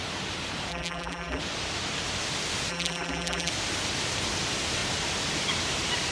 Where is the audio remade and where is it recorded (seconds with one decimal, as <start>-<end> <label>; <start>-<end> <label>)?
0.0-0.7 recorded; 0.7-1.4 remade; 1.4-2.7 recorded; 2.7-3.5 remade; 3.5-6.1 recorded